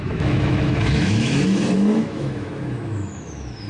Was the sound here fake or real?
fake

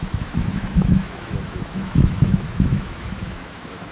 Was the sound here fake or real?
fake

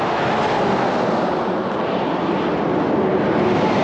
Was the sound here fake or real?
real